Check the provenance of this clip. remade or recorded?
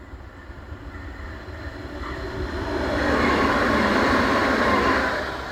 recorded